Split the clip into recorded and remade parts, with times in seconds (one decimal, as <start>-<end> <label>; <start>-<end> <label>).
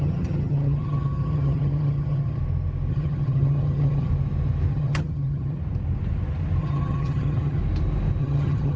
0.0-2.4 remade; 2.4-2.9 recorded; 2.9-4.1 remade; 4.1-4.7 recorded; 4.7-5.6 remade; 5.6-6.6 recorded; 6.6-7.6 remade; 7.6-8.2 recorded; 8.2-8.8 remade